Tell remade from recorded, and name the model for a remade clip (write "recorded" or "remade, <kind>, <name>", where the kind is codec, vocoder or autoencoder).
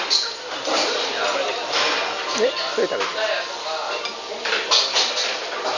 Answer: recorded